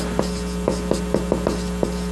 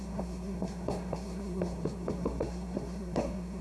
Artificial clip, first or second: second